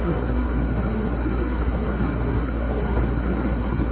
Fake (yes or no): yes